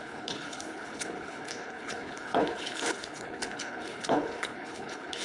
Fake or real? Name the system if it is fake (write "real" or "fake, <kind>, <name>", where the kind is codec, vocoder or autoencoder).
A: fake, codec, HILCodec